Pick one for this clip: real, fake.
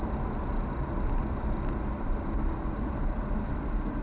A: fake